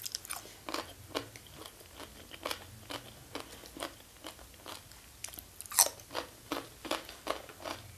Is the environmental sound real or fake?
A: real